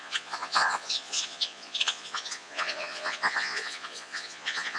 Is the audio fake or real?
fake